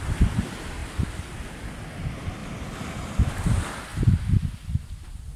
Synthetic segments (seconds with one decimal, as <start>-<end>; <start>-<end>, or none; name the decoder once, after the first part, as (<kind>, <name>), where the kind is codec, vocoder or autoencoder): none

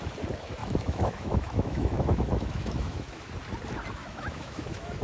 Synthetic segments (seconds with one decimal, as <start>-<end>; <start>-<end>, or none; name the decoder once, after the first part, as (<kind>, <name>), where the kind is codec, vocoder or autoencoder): 0.6-3.3 (autoencoder, DAC-VAE); 4.0-5.0

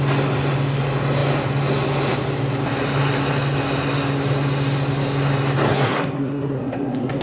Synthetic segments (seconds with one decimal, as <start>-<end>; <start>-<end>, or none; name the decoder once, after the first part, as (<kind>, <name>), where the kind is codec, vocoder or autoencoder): 5.7-7.2 (codec, SNAC)

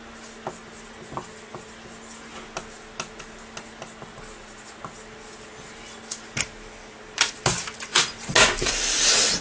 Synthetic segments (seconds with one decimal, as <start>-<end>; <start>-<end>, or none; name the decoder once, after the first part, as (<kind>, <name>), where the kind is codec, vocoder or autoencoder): none

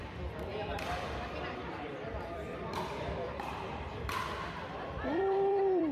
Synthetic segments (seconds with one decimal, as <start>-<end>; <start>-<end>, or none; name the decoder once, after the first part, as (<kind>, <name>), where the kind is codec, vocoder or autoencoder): 0.0-5.9 (vocoder, BigVGAN v2)

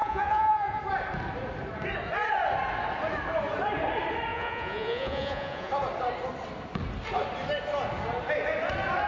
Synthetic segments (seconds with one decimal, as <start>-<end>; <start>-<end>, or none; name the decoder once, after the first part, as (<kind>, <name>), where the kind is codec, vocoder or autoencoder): 0.0-0.8 (vocoder, Vocos); 4.3-5.7

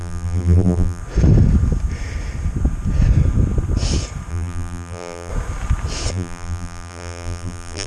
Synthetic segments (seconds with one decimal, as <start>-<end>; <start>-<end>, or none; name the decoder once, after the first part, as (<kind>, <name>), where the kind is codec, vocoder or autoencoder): 0.0-1.0 (vocoder, BigVGAN v2); 4.3-5.3; 6.1-7.9

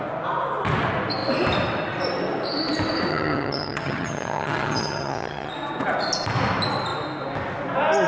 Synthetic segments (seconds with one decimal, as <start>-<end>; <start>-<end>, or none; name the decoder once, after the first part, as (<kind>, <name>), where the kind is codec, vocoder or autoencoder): 3.1-5.5 (vocoder, HiFi-GAN)